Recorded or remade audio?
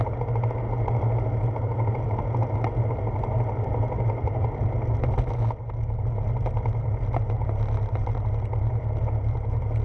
recorded